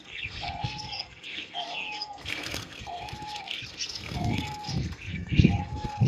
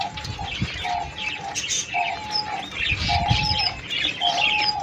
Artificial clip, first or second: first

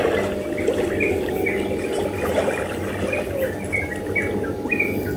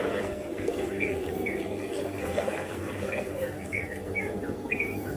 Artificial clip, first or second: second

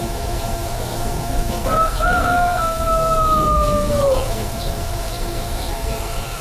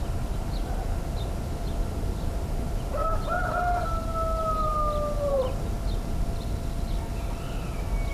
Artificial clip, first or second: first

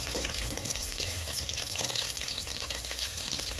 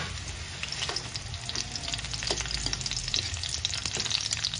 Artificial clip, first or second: first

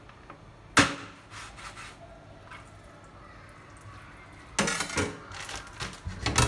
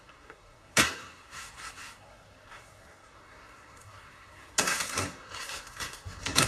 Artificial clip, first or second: second